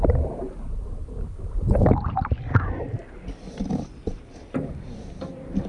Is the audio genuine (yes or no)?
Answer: yes